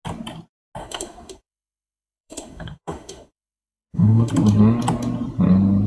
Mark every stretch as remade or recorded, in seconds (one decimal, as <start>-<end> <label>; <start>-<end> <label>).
0.0-0.8 recorded; 0.8-4.3 remade; 4.3-5.9 recorded